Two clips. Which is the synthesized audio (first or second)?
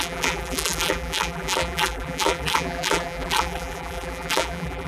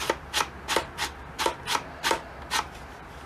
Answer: first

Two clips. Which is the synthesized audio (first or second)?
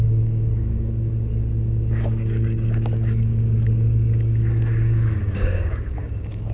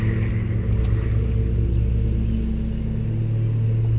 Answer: first